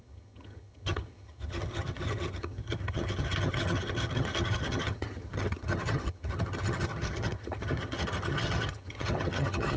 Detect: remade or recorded remade